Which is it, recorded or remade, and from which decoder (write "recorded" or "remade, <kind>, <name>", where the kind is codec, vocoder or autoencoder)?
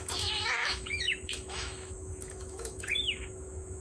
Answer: remade, autoencoder, DAC-VAE